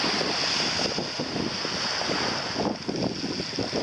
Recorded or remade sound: recorded